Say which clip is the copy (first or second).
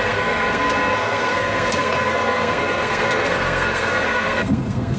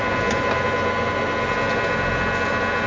first